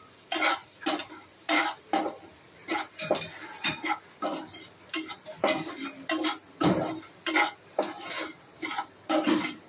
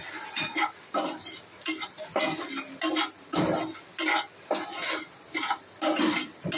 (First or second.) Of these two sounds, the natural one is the second